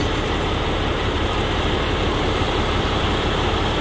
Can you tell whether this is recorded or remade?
remade